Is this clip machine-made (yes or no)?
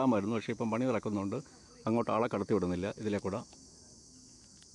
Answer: yes